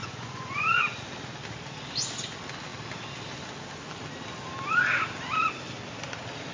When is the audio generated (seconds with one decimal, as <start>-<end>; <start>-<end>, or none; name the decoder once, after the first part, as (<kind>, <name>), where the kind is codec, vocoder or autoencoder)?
0.0-1.0 (vocoder, Vocos)